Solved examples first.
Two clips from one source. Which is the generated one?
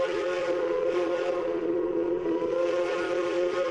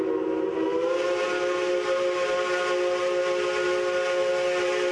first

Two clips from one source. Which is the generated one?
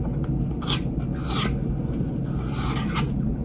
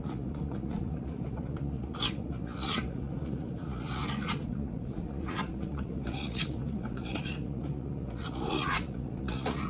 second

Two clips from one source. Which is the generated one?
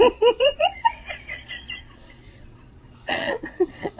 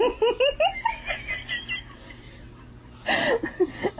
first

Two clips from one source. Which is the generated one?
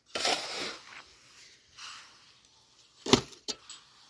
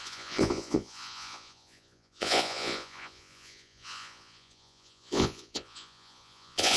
second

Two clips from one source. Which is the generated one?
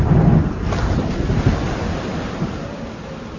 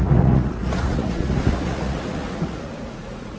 second